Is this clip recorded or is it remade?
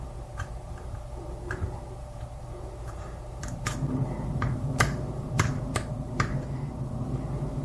remade